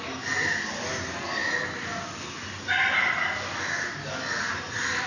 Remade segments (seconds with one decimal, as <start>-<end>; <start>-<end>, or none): none

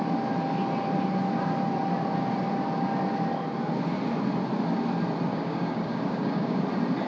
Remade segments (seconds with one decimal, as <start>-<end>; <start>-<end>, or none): 5.3-6.6

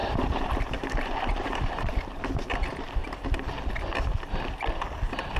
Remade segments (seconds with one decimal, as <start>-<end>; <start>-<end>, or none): 0.0-2.3; 3.0-3.7

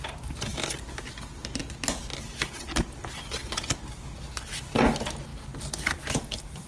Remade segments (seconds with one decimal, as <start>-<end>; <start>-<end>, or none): none